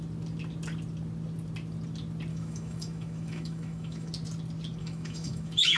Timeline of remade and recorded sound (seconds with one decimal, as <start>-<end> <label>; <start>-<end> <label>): 0.0-2.3 recorded; 2.3-4.1 remade; 4.1-4.8 recorded; 4.8-5.8 remade